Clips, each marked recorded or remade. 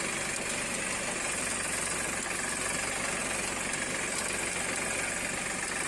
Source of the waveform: recorded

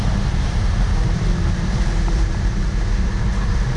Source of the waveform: remade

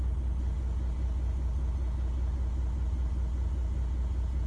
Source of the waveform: recorded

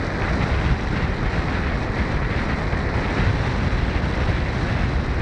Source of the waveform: recorded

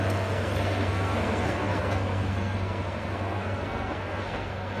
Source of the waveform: remade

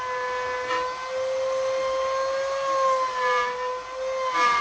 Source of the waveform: recorded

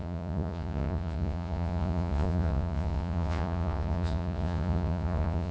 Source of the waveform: remade